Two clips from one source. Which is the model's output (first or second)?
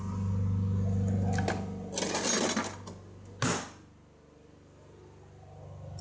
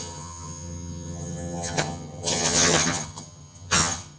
second